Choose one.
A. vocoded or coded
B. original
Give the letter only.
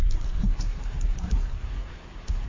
A